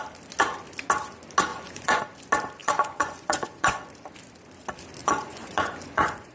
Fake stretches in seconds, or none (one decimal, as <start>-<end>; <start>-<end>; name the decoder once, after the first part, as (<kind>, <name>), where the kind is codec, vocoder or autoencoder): 1.5-2.0 (vocoder, Vocos); 2.6-3.8; 5.0-6.3